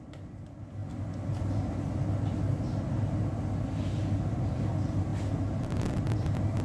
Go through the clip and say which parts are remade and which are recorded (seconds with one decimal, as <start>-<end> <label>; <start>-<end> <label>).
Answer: 0.0-6.6 recorded

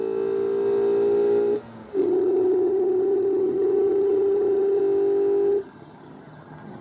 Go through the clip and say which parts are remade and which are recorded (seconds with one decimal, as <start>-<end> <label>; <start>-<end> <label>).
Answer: 0.0-2.0 recorded; 2.0-4.8 remade; 4.8-5.5 recorded; 5.5-6.8 remade

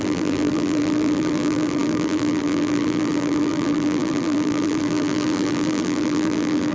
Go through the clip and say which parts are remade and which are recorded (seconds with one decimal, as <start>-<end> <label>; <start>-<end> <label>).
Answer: 0.0-6.7 remade

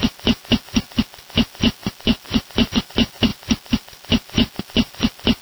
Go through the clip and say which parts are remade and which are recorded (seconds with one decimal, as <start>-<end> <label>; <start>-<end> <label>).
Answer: 0.0-1.8 recorded; 1.8-2.9 remade; 2.9-3.3 recorded; 3.3-4.6 remade; 4.6-5.4 recorded

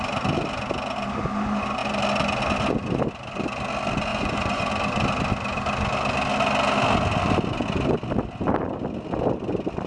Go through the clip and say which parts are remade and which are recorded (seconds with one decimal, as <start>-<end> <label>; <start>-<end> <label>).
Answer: 0.0-4.1 recorded; 4.1-4.7 remade; 4.7-9.9 recorded

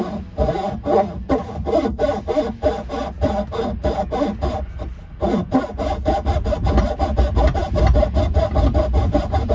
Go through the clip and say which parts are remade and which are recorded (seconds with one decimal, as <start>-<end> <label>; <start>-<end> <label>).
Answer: 0.0-9.5 recorded

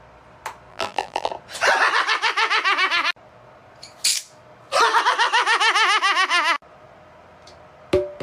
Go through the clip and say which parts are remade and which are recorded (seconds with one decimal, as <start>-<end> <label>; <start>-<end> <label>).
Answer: 0.0-0.7 recorded; 0.7-1.3 remade; 1.3-8.2 recorded